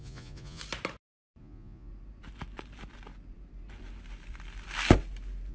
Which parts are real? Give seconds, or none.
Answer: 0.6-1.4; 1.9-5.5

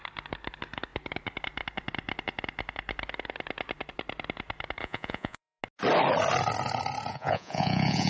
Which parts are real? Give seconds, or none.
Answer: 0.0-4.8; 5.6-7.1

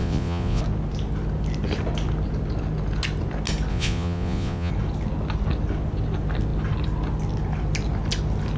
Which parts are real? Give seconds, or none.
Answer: 0.6-3.7; 4.7-8.6

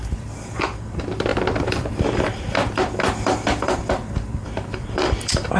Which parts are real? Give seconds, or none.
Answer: none

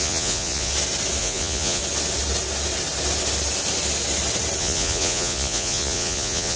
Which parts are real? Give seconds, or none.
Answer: 0.7-1.2; 1.8-4.6